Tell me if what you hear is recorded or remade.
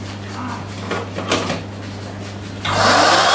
recorded